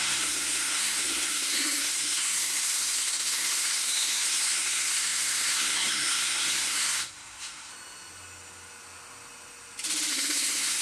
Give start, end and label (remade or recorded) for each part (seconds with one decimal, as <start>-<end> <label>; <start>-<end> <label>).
0.0-7.7 remade; 7.7-10.1 recorded; 10.1-10.8 remade